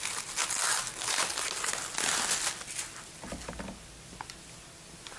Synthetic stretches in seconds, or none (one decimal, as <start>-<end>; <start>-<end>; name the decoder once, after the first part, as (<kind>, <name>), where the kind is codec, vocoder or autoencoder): none